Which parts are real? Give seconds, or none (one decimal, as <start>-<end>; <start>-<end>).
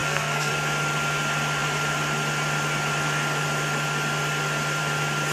0.5-5.3